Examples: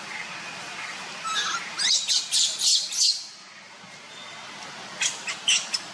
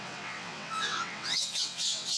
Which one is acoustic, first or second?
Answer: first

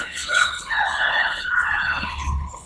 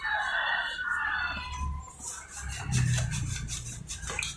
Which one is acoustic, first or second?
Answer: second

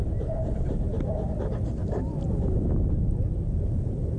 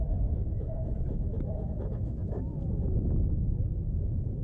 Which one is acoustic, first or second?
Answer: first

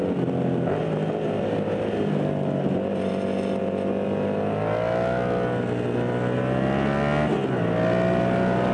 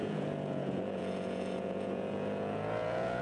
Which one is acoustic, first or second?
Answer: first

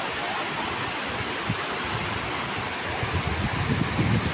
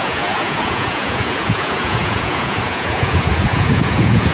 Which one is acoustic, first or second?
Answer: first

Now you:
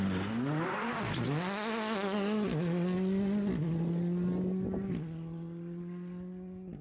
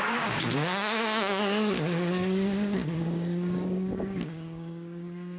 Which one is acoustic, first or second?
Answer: first